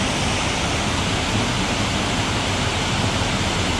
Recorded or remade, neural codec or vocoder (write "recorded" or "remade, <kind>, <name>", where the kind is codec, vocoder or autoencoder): recorded